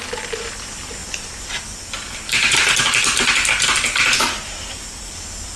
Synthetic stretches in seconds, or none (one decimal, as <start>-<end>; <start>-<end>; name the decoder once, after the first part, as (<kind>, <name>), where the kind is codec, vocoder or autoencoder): none